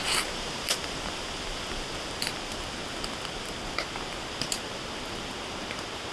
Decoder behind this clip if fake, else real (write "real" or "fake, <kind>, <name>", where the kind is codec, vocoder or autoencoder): real